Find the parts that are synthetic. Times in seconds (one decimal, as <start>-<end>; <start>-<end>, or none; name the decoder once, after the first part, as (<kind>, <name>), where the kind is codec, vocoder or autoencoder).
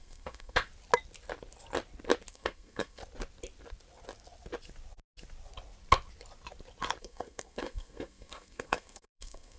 0.0-0.7 (codec, SNAC); 2.3-3.0; 7.0-9.6